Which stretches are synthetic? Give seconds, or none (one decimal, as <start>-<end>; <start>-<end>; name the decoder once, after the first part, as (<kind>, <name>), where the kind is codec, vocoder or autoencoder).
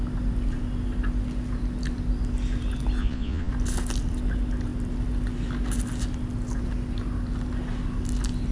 3.0-3.5 (vocoder, Vocos)